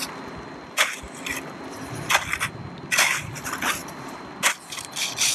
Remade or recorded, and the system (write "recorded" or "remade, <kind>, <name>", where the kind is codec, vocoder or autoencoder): recorded